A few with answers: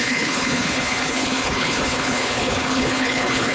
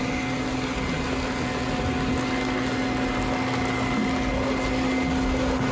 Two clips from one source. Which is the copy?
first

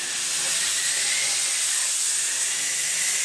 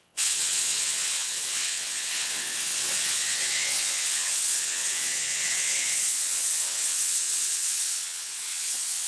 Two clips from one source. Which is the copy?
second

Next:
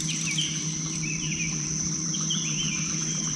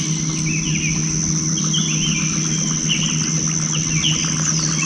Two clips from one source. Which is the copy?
first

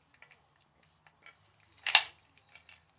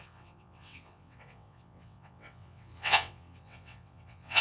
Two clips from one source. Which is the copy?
second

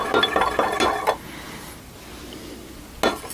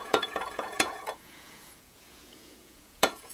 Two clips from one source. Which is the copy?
second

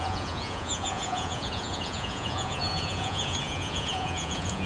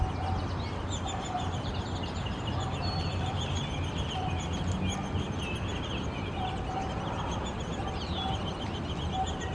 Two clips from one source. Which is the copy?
first